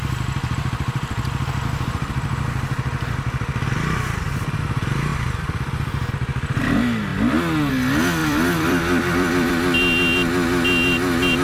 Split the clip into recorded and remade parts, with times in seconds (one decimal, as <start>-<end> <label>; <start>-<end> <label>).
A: 0.0-5.1 recorded; 5.1-6.1 remade; 6.1-8.2 recorded; 8.2-9.5 remade; 9.5-11.4 recorded